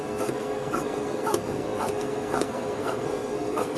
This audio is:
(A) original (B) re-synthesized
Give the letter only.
B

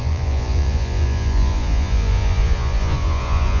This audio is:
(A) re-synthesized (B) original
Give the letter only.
A